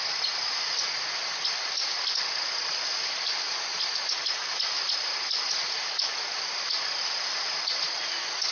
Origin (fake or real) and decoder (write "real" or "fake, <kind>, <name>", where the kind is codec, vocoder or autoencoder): real